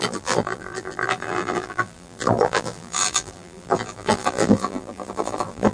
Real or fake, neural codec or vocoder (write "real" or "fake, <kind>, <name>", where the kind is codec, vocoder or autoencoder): fake, vocoder, BigVGAN v2